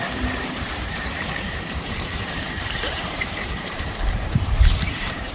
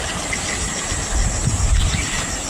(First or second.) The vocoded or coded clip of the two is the first